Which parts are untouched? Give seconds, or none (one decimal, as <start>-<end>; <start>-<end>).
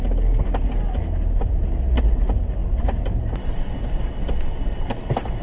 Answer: 0.0-5.4